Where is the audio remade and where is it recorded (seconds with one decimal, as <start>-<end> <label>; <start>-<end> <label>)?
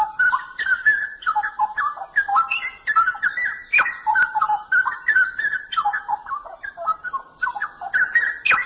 0.0-8.7 recorded